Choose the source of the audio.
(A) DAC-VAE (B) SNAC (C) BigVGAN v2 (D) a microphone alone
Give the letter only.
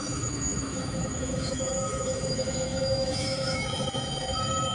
A